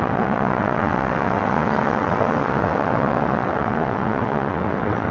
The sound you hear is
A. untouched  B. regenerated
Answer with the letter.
B